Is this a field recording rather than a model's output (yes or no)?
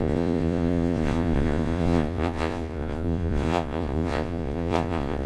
no